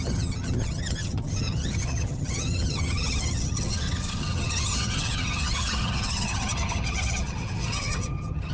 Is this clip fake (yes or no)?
yes